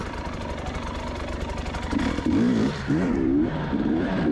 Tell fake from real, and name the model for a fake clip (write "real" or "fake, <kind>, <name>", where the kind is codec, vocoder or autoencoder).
fake, vocoder, BigVGAN v2